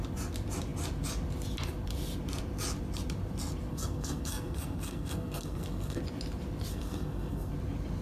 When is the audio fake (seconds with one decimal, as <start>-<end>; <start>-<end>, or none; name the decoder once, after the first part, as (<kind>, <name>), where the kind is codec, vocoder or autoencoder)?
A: 3.7-6.0 (codec, SNAC); 6.7-7.5